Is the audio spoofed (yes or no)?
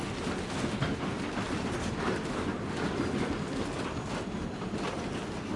no